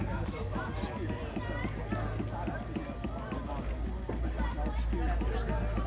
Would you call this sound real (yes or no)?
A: yes